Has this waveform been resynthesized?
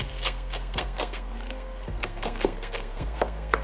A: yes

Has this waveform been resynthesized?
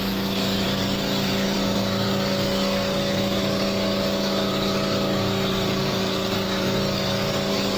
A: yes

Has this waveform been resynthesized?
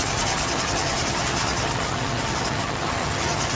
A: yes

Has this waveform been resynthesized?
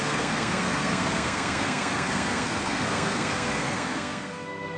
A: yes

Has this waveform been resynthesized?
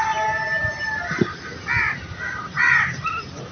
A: no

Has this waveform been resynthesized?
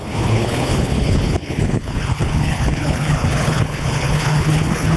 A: yes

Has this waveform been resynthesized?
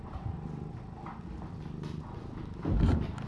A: no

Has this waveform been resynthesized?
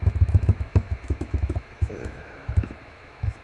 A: yes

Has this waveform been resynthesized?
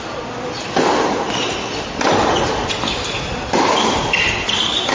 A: no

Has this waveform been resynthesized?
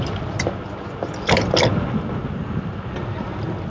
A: no